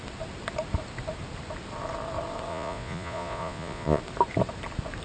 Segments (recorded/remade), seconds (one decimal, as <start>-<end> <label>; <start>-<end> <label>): 0.0-2.5 recorded; 2.5-4.0 remade; 4.0-5.0 recorded